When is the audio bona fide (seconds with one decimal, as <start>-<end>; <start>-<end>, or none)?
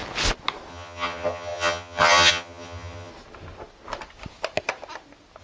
0.0-0.7; 3.1-5.4